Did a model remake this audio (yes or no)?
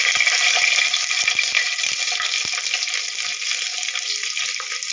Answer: no